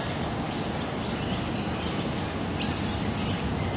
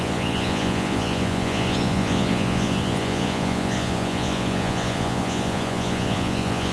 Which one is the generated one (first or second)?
second